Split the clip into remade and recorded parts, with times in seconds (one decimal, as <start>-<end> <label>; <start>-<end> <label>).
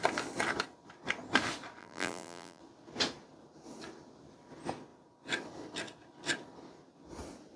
0.0-1.8 recorded; 1.8-2.6 remade; 2.6-7.6 recorded